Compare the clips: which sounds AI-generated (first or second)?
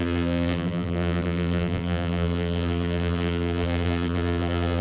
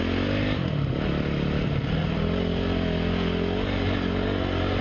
first